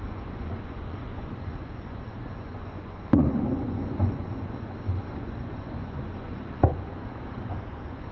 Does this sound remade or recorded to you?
remade